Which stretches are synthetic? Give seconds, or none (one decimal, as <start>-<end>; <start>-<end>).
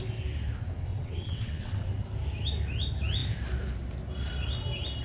0.9-1.9